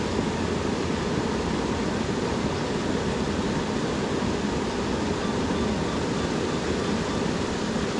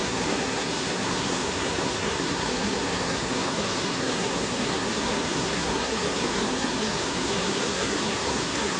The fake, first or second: second